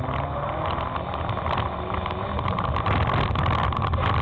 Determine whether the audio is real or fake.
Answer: real